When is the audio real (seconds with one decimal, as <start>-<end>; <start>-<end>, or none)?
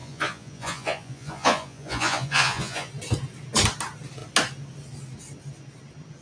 2.9-6.2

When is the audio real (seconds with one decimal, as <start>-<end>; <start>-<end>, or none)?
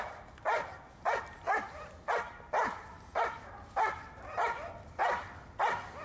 0.0-6.0